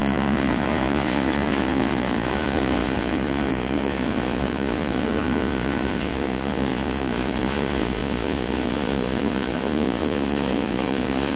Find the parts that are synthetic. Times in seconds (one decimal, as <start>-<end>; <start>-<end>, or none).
0.0-11.4